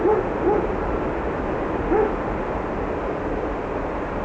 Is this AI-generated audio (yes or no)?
no